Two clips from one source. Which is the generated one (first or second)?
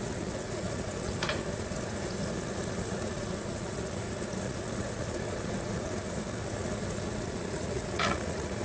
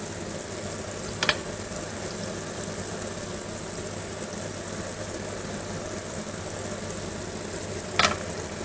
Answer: first